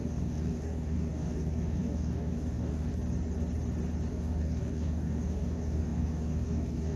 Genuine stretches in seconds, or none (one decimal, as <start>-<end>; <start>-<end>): 2.9-4.1